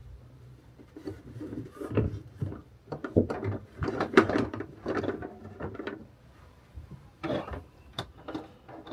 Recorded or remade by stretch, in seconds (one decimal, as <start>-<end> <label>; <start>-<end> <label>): 0.0-5.0 remade; 5.0-6.0 recorded; 6.0-8.0 remade; 8.0-8.9 recorded